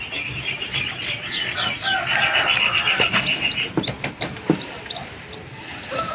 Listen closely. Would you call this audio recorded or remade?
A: recorded